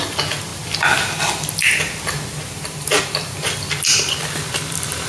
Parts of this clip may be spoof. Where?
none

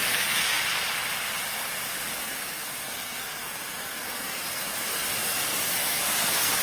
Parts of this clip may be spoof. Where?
0.0-0.6 (codec, SNAC); 2.2-6.6

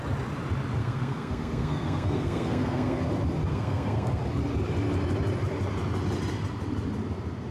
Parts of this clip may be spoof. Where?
0.8-3.0 (codec, SNAC); 3.5-4.2